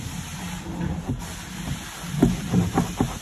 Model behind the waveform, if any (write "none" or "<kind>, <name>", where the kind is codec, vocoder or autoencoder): none